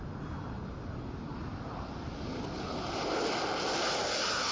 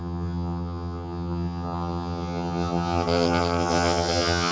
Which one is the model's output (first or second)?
second